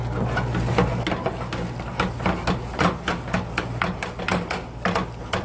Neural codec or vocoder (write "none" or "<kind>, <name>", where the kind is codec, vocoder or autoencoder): none